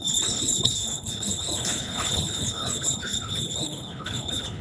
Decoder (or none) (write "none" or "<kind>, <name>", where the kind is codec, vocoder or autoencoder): codec, HILCodec